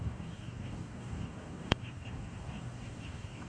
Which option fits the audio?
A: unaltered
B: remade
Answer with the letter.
B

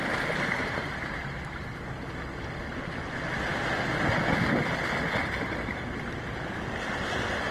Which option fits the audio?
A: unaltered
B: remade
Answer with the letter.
A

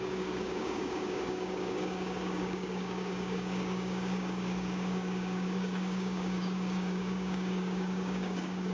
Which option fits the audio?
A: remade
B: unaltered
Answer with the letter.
A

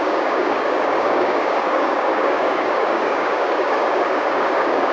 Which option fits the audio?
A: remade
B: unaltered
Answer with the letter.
A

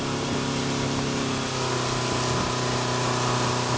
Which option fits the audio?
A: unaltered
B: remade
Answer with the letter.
A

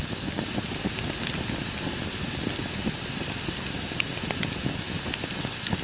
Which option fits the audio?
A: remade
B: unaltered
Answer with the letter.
B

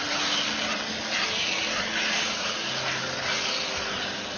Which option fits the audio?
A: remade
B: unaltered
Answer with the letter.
B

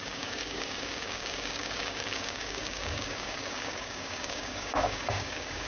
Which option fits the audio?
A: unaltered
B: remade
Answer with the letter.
B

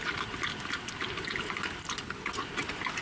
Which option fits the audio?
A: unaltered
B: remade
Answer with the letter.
A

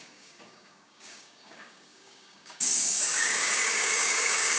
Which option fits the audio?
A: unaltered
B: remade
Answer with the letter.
B